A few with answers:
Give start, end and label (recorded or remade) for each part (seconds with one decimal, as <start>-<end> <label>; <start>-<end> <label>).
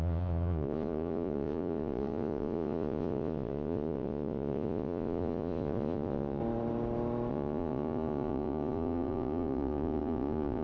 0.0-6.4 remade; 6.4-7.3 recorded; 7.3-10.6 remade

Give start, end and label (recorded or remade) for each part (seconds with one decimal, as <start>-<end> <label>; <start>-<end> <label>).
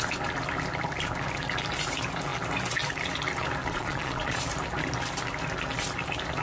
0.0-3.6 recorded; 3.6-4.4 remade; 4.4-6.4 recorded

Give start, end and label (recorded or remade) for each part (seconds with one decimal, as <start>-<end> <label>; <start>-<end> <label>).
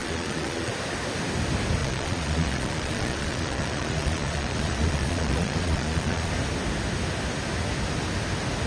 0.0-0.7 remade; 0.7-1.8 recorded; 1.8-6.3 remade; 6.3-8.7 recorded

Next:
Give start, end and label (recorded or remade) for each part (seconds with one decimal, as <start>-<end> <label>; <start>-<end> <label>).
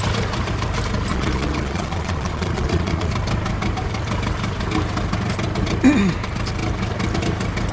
0.0-1.1 recorded; 1.1-3.1 remade; 3.1-7.7 recorded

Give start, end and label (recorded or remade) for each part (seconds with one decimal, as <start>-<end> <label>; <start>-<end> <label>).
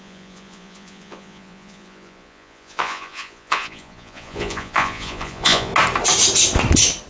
0.0-5.7 remade; 5.7-7.1 recorded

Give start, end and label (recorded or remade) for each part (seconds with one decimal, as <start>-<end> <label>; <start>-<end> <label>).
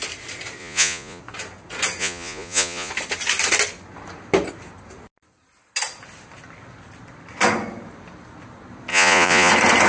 0.0-0.6 recorded; 0.6-1.2 remade; 1.2-2.0 recorded; 2.0-2.9 remade; 2.9-8.9 recorded; 8.9-9.5 remade; 9.5-9.9 recorded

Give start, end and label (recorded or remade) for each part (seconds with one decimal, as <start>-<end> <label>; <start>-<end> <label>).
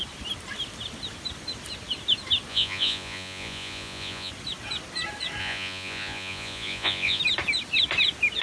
0.0-2.5 recorded; 2.5-4.3 remade; 4.3-5.4 recorded; 5.4-7.2 remade; 7.2-8.4 recorded